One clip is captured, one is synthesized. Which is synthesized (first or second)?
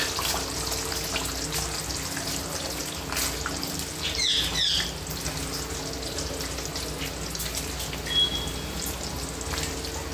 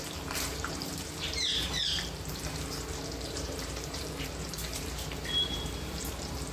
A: second